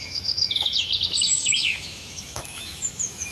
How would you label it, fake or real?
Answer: fake